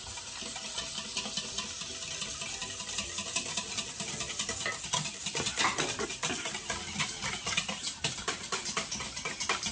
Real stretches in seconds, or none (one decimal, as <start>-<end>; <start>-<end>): 0.0-9.7